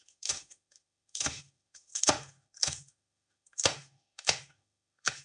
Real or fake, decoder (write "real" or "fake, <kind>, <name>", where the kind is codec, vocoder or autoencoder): fake, autoencoder, DAC-VAE